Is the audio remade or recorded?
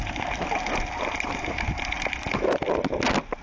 recorded